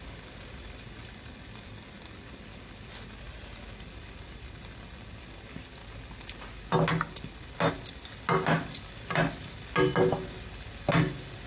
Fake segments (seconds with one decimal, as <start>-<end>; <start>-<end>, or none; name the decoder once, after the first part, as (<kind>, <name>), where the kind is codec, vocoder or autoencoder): none